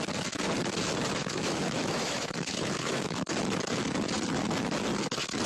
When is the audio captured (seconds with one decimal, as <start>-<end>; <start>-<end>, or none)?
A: 0.0-1.2; 3.3-5.5